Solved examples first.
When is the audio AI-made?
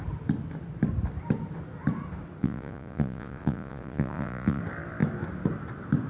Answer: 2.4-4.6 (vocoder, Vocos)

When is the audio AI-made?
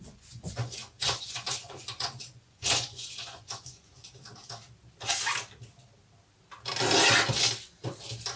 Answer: 0.0-4.0 (vocoder, Vocos)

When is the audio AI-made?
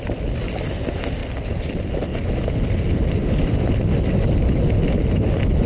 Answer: none